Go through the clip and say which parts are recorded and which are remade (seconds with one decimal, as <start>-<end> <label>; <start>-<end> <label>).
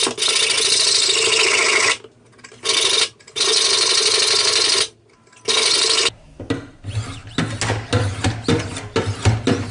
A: 0.0-9.7 recorded